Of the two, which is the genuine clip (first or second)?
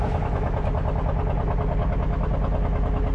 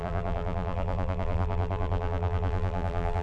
first